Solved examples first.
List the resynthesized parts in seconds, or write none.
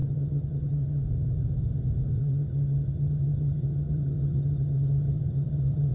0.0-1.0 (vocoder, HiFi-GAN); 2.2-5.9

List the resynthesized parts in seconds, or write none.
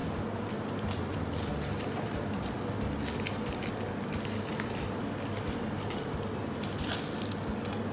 none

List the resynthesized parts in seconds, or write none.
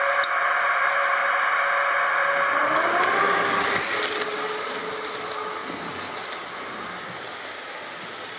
none